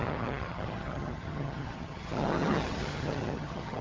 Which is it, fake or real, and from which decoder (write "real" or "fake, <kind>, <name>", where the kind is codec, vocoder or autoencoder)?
fake, vocoder, HiFi-GAN